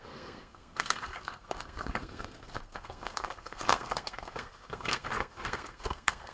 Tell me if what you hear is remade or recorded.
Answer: remade